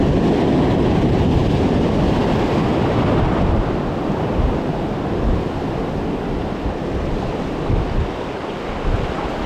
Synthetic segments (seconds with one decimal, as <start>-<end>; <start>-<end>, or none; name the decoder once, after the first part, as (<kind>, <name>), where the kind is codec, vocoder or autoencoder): none